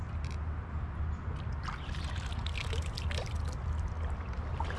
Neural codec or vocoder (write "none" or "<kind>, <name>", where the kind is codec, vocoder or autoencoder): none